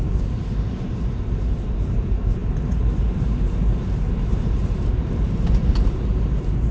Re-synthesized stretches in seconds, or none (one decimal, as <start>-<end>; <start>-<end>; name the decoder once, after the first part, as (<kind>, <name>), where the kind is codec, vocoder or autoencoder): 0.0-6.7 (vocoder, BigVGAN v2)

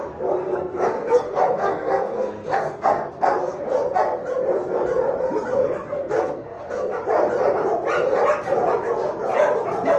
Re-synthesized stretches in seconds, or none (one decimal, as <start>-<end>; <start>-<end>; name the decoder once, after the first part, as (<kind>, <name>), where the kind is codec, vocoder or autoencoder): 0.4-3.6 (codec, SNAC); 5.5-7.0

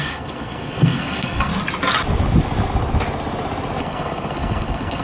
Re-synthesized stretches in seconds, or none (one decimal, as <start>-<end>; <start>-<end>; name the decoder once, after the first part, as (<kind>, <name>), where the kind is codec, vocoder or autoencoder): 0.0-1.5 (codec, SNAC); 3.8-5.0

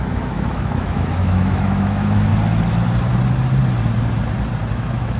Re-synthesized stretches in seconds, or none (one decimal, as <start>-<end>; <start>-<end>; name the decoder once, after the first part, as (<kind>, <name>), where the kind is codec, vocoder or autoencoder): 0.0-2.3 (autoencoder, DAC-VAE); 4.7-5.2